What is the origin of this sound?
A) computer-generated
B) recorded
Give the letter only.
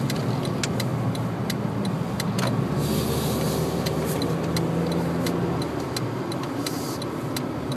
B